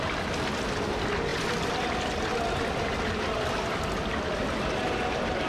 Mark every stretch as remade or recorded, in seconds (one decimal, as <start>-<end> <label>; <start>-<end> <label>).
0.0-5.5 recorded